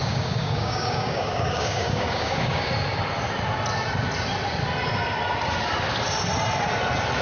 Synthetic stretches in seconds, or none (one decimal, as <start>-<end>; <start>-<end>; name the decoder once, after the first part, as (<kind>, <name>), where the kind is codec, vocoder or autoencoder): 0.0-2.7 (codec, DAC)